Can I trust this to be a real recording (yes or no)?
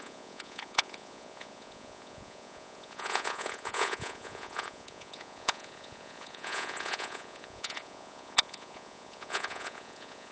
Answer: no